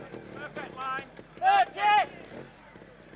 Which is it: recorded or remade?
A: recorded